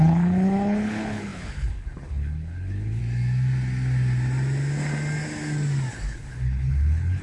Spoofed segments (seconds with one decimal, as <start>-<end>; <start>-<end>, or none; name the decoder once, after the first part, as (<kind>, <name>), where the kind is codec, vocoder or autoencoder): 0.0-3.0 (codec, HILCodec); 5.9-7.2

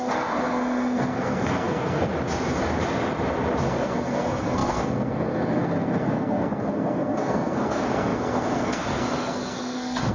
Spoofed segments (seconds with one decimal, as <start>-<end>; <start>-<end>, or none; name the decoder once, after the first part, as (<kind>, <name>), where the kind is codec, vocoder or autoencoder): 0.0-2.1 (codec, SNAC); 3.6-10.1